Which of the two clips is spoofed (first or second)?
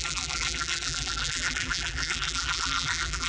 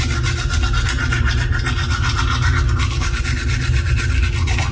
first